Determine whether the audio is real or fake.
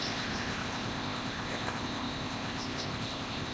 fake